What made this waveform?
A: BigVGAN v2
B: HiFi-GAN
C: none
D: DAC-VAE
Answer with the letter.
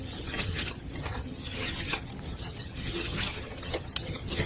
B